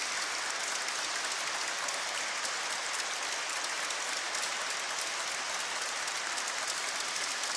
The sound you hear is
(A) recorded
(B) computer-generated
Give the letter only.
A